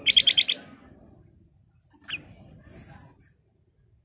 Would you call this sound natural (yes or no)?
yes